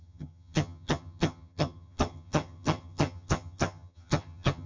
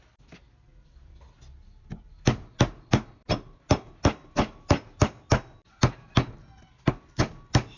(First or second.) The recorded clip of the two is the second